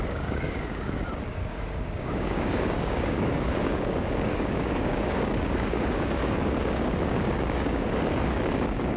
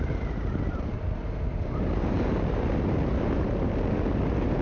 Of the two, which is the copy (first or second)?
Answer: first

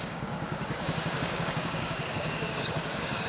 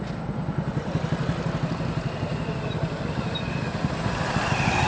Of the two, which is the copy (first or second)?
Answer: first